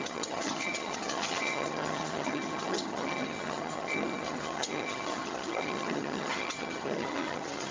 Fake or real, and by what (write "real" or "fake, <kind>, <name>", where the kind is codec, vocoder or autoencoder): fake, vocoder, HiFi-GAN